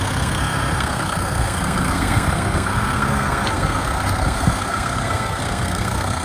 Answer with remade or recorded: remade